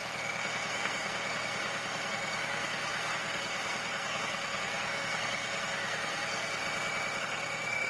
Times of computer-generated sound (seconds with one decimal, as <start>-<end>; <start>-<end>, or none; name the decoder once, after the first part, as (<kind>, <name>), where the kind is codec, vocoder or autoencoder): 0.0-6.6 (codec, SNAC); 7.2-7.9